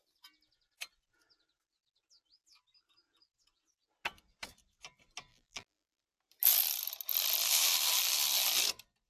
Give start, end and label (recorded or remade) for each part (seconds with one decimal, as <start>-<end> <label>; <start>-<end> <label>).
0.0-5.3 recorded; 5.3-6.0 remade; 6.0-9.1 recorded